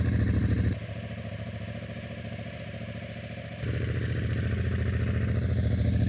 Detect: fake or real fake